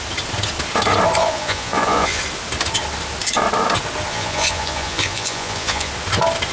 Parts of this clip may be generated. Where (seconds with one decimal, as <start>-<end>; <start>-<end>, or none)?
1.2-2.2; 4.1-5.9